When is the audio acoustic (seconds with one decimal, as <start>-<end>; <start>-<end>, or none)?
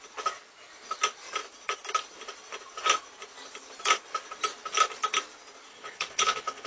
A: 0.0-5.7